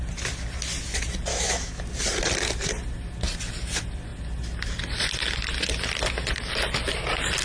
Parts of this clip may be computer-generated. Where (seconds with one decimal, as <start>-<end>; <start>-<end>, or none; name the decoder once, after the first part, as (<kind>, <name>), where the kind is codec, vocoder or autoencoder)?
1.3-1.8 (autoencoder, DAC-VAE)